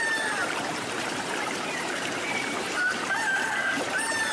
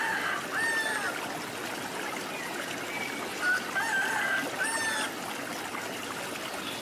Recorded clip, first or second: second